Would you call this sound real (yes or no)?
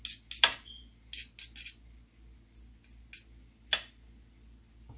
yes